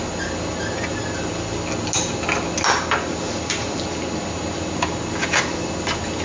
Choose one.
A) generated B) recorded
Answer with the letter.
B